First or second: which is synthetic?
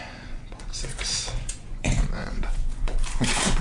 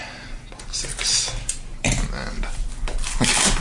first